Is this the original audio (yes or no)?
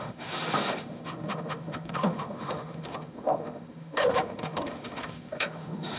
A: no